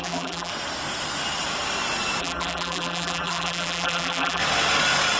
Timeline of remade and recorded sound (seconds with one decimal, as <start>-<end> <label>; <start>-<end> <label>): 0.0-0.5 remade; 0.5-2.2 recorded; 2.2-4.4 remade; 4.4-5.2 recorded